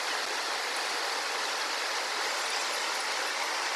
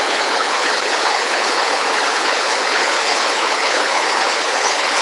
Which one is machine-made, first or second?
second